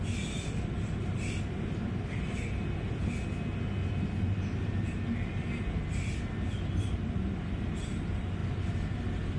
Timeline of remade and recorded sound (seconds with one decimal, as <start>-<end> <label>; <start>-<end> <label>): 0.0-9.4 recorded